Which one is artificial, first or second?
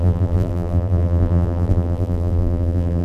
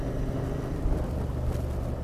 first